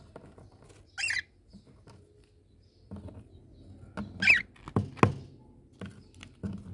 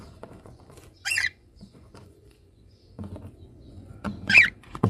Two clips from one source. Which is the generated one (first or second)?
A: second